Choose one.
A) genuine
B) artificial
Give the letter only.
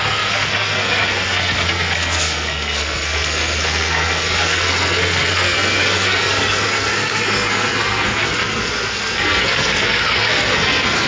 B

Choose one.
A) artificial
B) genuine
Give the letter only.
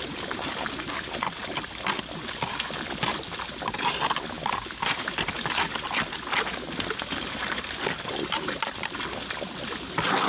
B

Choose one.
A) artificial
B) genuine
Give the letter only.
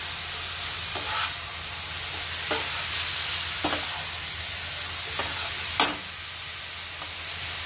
B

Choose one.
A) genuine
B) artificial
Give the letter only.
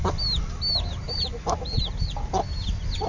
A